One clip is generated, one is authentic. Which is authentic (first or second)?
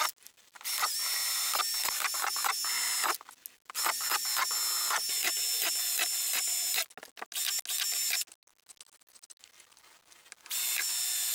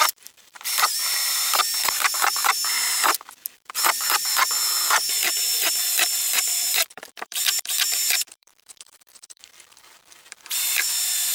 first